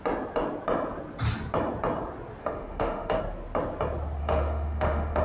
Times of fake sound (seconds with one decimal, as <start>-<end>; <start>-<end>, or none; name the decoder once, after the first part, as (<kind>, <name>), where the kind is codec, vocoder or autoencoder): 2.4-3.2 (autoencoder, DAC-VAE); 4.2-5.2